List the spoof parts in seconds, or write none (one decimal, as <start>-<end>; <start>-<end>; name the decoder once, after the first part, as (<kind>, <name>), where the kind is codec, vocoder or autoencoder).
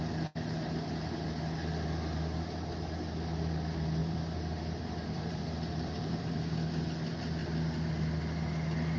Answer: 4.0-6.4 (vocoder, BigVGAN v2)